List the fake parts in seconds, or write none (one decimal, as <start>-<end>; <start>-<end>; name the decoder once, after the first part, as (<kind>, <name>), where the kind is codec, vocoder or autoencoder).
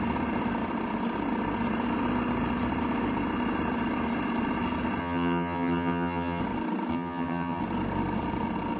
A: 5.0-6.4 (vocoder, HiFi-GAN); 6.9-7.6